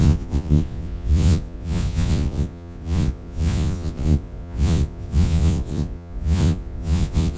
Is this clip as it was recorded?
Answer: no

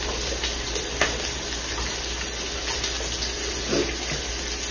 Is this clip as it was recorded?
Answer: yes